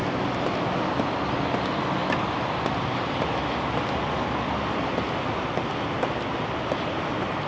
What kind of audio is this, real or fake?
real